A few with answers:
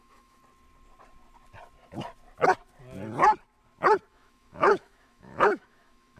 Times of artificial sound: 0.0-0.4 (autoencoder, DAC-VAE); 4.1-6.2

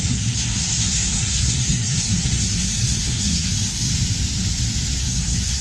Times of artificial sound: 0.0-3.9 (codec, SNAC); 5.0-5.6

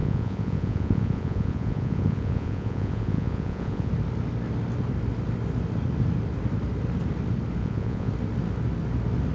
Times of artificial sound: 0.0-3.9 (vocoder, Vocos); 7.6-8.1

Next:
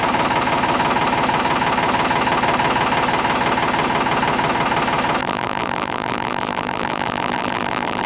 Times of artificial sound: 5.2-8.1 (vocoder, BigVGAN v2)

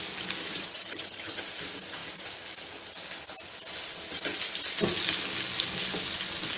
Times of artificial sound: 0.4-1.4 (vocoder, HiFi-GAN)

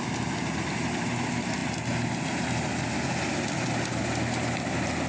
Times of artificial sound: none

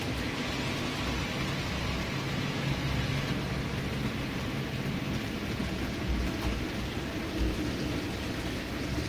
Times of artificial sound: 5.6-6.2 (vocoder, Vocos)

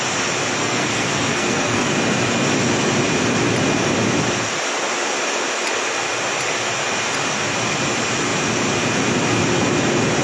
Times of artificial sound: 0.6-1.9 (codec, SNAC)